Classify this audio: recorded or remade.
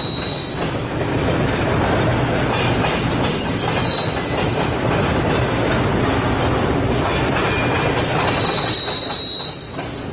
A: recorded